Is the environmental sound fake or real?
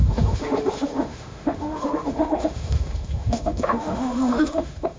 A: fake